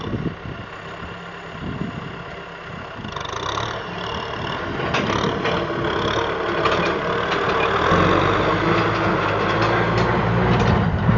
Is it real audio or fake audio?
real